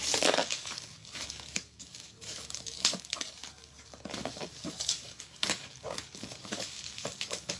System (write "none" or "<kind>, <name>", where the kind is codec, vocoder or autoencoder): codec, DAC